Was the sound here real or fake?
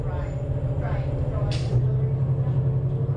real